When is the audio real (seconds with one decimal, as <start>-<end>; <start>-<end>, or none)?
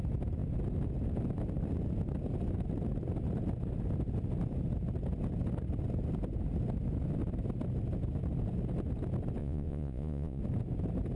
0.0-9.4; 10.4-11.2